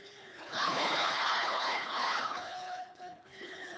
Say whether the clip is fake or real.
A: fake